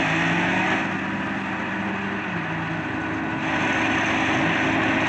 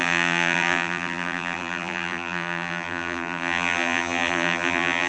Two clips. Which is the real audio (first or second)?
first